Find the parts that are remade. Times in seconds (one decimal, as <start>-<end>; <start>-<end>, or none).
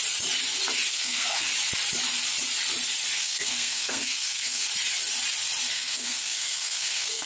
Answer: 0.9-1.5; 3.2-4.7; 5.7-7.3